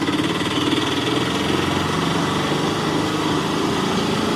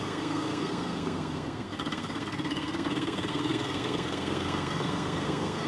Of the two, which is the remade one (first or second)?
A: second